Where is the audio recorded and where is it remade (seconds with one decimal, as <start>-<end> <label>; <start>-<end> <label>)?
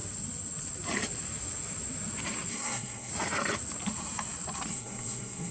0.0-2.5 recorded; 2.5-3.1 remade; 3.1-4.7 recorded; 4.7-5.5 remade